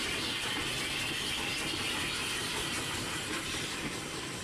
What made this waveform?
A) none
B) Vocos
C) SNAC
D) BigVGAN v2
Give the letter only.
A